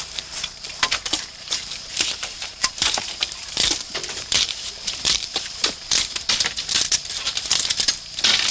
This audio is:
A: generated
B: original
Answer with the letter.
A